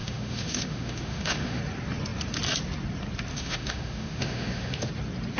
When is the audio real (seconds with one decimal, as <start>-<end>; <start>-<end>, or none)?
1.6-3.3; 4.9-5.4